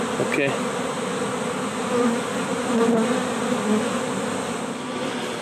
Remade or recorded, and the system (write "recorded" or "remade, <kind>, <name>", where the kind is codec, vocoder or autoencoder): recorded